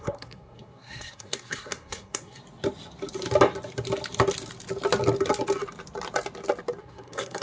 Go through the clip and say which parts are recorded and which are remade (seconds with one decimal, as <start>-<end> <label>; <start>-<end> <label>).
0.0-2.4 remade; 2.4-6.8 recorded; 6.8-7.4 remade